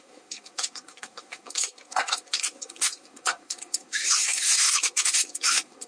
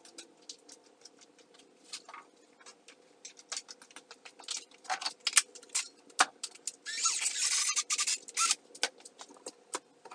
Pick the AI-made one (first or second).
first